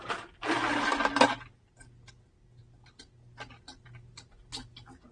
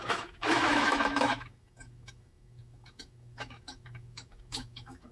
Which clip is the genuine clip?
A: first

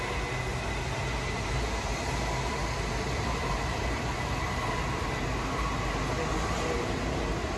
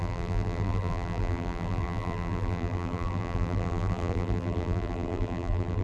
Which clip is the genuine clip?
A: first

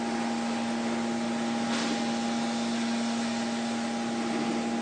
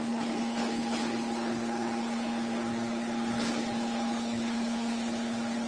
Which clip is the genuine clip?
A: first